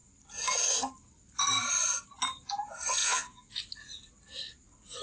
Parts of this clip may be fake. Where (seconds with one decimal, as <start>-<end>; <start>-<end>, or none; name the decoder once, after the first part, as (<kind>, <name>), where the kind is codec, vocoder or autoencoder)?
3.0-3.6 (vocoder, Vocos)